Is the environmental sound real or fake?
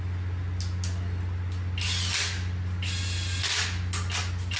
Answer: real